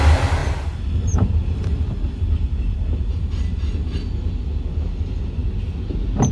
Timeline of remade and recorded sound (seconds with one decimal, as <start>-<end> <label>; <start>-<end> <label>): 0.0-6.3 recorded